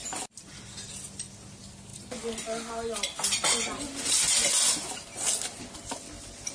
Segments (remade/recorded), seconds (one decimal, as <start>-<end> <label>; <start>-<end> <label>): 0.0-6.5 recorded